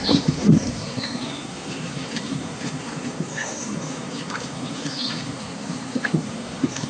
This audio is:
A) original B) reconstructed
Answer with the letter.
B